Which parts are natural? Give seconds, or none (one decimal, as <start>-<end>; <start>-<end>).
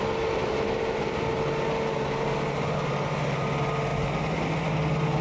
0.0-5.2